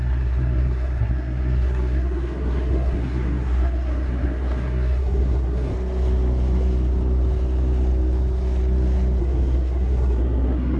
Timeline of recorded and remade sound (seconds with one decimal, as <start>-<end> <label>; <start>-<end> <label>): 0.0-5.7 remade; 5.7-9.2 recorded; 9.2-10.8 remade